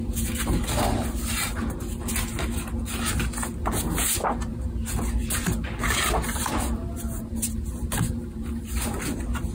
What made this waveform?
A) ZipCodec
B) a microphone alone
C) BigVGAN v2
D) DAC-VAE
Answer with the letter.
B